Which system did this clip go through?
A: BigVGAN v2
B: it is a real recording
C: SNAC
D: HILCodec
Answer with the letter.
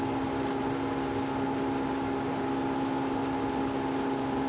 B